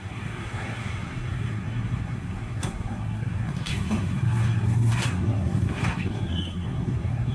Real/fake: fake